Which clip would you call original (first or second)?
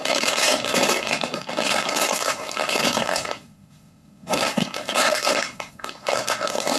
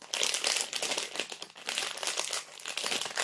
second